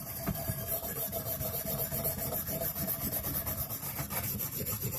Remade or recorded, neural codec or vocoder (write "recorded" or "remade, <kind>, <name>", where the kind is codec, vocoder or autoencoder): recorded